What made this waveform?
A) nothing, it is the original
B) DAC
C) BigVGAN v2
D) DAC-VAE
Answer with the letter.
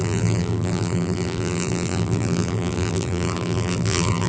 C